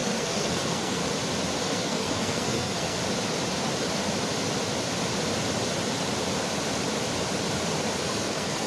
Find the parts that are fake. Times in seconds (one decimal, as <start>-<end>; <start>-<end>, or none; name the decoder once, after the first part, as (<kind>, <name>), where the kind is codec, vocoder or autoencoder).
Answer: 0.0-1.0 (codec, SNAC); 1.6-3.0; 8.0-8.7